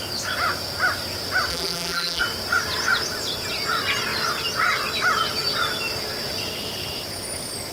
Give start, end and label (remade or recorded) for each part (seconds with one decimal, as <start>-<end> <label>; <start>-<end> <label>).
0.0-1.5 recorded; 1.5-2.2 remade; 2.2-7.7 recorded